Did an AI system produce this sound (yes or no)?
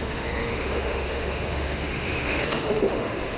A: yes